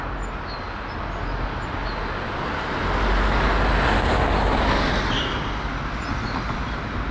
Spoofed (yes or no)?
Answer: no